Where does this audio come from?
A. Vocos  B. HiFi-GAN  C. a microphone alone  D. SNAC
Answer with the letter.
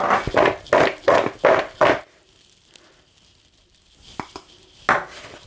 C